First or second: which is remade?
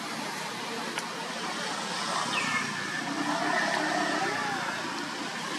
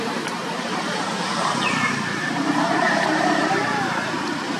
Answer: second